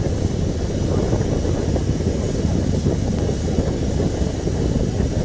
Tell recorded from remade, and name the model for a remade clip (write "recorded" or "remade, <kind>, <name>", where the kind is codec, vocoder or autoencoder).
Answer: recorded